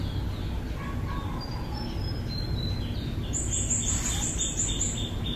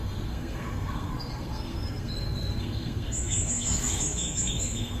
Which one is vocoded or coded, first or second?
second